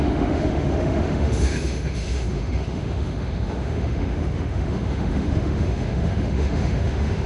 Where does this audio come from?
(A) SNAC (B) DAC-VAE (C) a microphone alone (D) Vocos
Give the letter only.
B